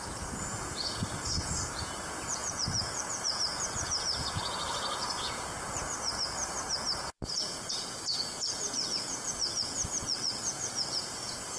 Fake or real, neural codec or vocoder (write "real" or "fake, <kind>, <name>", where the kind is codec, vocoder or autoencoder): fake, vocoder, Vocos